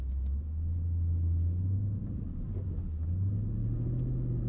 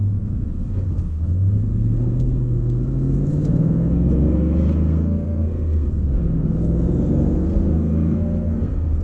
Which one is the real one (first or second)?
first